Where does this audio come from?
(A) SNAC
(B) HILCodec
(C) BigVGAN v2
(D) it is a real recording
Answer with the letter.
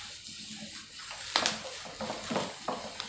D